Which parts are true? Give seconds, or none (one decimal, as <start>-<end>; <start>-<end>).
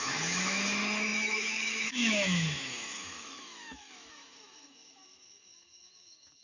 none